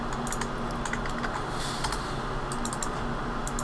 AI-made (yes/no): no